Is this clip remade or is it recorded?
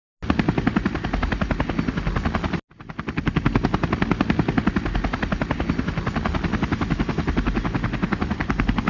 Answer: recorded